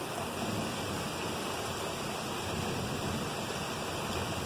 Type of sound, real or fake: real